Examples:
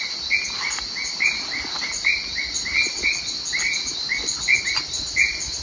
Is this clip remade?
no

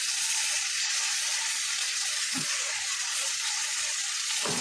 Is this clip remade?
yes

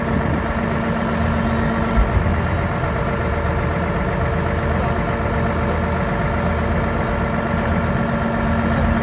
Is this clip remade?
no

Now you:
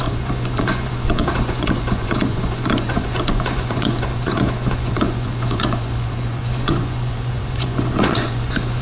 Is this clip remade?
yes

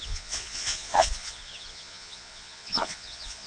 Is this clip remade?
yes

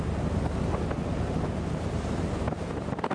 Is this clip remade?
no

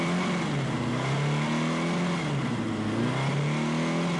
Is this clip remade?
no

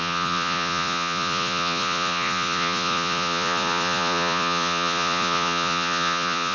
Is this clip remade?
yes